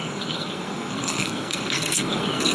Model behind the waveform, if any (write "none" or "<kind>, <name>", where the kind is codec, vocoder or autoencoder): codec, SNAC